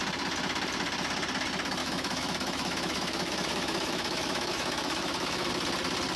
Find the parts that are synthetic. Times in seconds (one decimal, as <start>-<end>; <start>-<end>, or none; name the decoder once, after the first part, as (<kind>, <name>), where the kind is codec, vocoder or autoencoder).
1.8-5.5 (autoencoder, DAC-VAE)